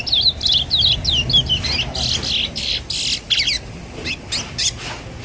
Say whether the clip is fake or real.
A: real